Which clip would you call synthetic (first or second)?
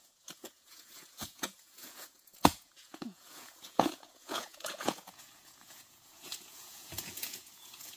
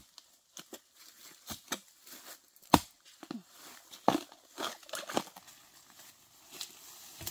first